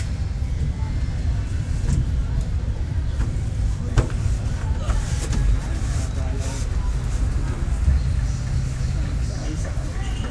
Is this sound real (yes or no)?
yes